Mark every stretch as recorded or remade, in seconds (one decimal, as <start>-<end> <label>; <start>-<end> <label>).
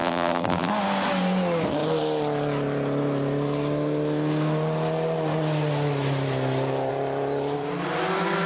0.0-0.7 remade; 0.7-8.5 recorded